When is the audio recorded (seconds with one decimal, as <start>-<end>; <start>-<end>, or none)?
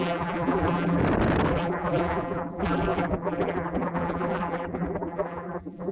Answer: 1.0-1.5